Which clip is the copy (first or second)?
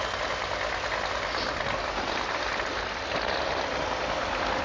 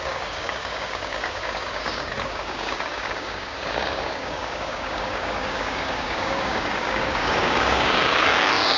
second